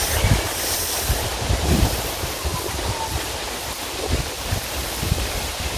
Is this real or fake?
real